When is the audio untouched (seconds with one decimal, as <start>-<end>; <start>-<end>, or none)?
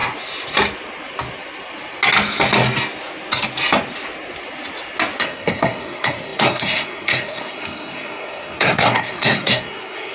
0.0-5.2